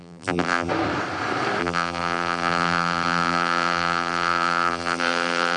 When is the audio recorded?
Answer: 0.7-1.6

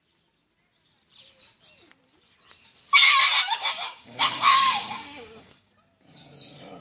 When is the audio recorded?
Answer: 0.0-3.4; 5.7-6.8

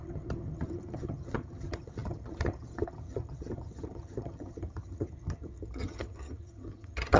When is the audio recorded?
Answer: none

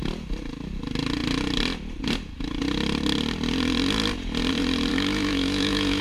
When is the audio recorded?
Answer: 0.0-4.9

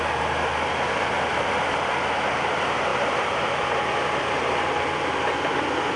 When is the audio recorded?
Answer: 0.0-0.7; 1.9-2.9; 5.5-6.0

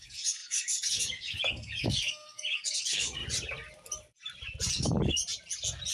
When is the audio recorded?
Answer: 3.2-4.7; 5.2-5.9

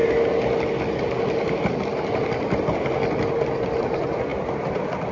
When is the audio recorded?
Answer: 0.0-5.1